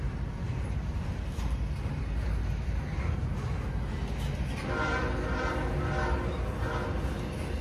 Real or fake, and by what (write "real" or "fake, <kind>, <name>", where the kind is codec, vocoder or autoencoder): real